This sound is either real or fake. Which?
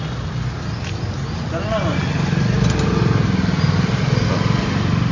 real